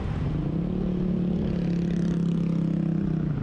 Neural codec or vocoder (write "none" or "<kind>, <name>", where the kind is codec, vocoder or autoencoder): none